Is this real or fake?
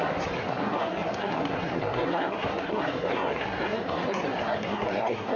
fake